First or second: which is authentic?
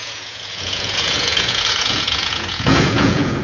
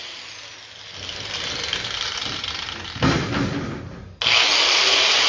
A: second